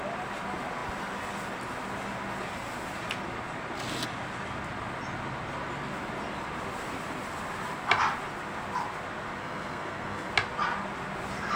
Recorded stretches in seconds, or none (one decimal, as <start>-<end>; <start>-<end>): 0.0-9.4; 10.3-11.6